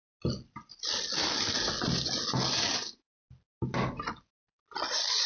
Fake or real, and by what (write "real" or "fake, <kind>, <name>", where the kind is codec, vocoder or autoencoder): real